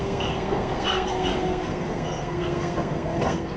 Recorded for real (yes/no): no